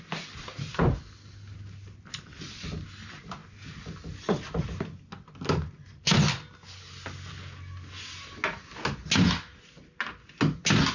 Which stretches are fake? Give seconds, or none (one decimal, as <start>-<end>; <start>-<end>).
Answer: none